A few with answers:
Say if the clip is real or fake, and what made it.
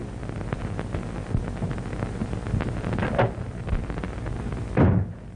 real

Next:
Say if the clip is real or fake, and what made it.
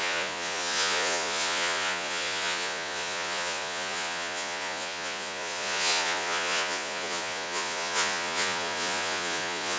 fake, vocoder, Vocos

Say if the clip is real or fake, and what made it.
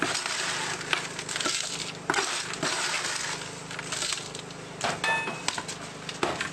real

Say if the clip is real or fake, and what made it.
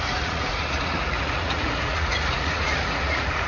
fake, vocoder, Vocos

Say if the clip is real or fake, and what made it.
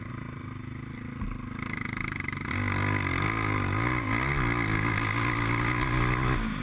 real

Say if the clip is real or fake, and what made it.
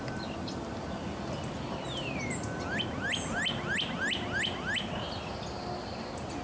real